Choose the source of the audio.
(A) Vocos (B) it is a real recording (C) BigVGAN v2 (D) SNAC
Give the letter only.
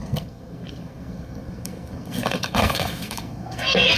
D